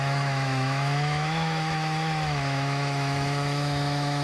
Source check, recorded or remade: remade